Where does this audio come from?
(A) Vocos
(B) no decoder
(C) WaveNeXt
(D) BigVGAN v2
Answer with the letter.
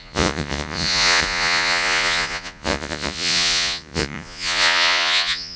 A